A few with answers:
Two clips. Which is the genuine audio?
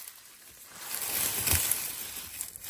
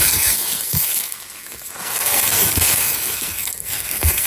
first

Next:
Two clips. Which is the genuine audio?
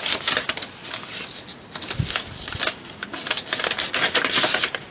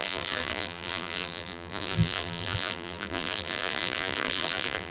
first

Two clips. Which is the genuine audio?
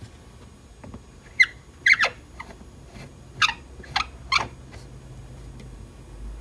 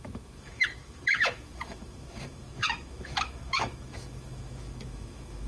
first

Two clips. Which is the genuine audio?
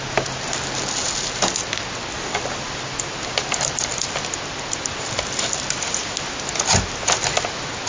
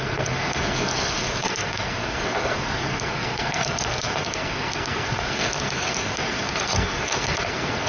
first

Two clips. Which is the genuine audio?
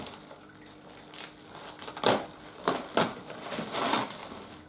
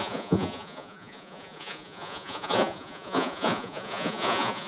first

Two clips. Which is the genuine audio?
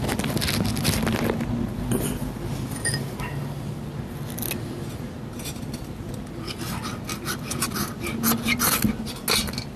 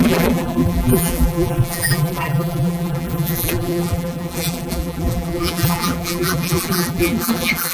first